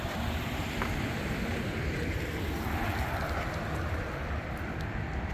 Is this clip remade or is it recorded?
recorded